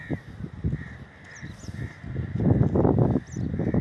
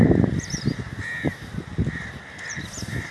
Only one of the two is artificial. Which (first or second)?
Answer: second